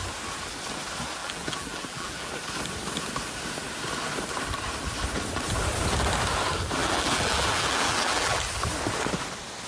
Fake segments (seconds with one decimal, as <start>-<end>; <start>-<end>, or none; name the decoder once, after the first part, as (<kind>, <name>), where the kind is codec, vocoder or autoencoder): 1.2-2.3 (vocoder, BigVGAN v2); 6.8-8.4